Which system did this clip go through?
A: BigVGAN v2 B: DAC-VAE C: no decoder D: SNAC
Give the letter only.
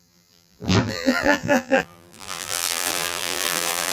A